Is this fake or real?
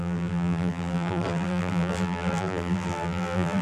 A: fake